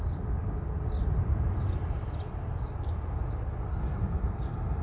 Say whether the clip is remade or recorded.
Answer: recorded